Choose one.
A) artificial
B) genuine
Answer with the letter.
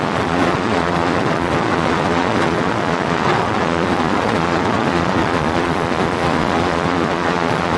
A